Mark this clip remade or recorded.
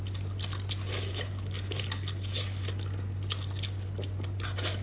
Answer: recorded